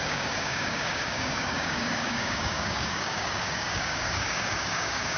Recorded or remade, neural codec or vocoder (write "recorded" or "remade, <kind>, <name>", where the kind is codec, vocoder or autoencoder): remade, codec, DAC